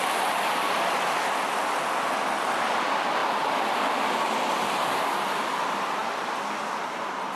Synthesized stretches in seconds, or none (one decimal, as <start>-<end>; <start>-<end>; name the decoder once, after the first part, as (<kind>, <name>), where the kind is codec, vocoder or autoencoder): 3.2-5.0 (vocoder, BigVGAN v2)